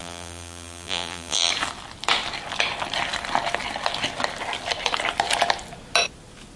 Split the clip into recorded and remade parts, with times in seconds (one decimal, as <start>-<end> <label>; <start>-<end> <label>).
0.0-1.5 remade; 1.5-6.6 recorded